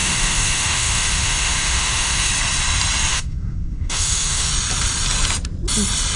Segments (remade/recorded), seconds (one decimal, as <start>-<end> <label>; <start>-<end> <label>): 0.0-2.3 remade; 2.3-3.1 recorded; 3.1-4.5 remade; 4.5-6.2 recorded